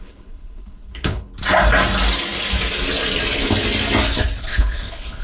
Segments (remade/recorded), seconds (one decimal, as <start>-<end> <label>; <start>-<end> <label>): 0.0-1.3 remade; 1.3-4.4 recorded; 4.4-5.2 remade